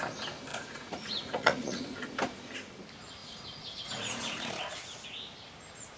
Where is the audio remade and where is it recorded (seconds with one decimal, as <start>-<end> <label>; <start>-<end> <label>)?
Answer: 0.0-0.5 recorded; 0.5-1.8 remade; 1.8-3.2 recorded; 3.2-4.5 remade; 4.5-6.0 recorded